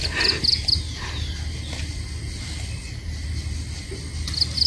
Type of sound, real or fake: real